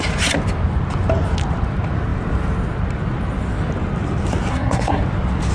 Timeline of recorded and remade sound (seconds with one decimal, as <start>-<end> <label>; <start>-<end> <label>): 0.0-4.5 recorded; 4.5-5.0 remade; 5.0-5.5 recorded